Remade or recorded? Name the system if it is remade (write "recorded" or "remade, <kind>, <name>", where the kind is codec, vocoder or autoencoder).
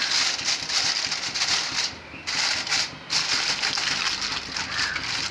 recorded